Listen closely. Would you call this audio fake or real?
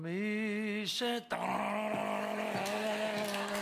real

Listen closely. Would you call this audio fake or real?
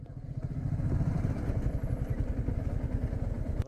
real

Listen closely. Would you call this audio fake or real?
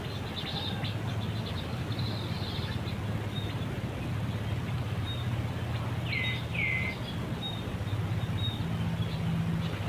real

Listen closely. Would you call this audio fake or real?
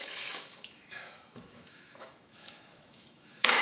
fake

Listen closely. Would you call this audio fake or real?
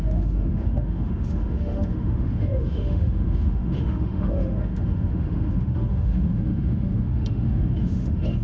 fake